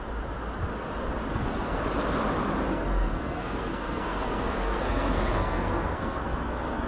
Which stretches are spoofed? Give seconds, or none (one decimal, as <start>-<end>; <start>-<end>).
1.3-1.8; 2.7-6.9